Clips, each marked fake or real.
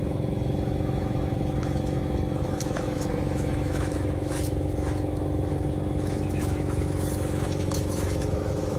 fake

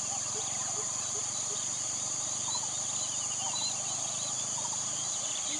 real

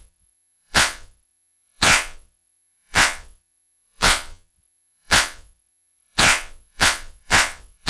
fake